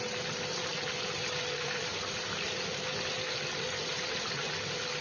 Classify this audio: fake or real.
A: real